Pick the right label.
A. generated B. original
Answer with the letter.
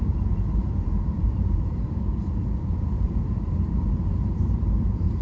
A